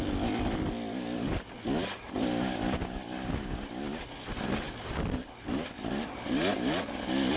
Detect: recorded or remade recorded